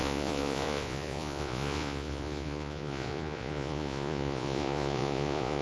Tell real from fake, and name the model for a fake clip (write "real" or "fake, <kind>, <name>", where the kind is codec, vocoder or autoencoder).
fake, vocoder, Vocos